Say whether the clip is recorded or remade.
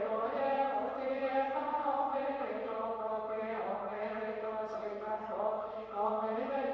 remade